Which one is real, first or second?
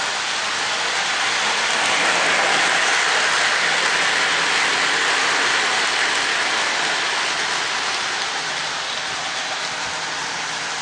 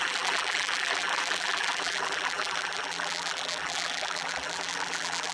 first